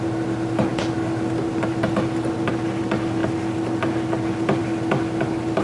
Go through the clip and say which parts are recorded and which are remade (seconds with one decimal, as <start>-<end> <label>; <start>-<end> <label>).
0.0-5.6 remade